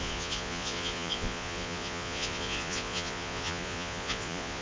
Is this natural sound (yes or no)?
no